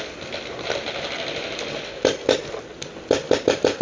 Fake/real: real